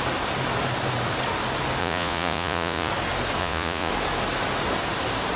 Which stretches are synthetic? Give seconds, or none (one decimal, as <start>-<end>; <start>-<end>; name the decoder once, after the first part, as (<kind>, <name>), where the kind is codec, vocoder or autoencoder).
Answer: 1.8-2.9 (vocoder, Vocos); 3.4-3.9